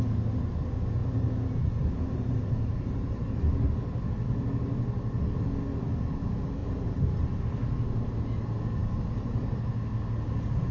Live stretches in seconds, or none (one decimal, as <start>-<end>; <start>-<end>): 0.0-1.0; 3.3-6.6; 7.4-8.8; 9.6-10.7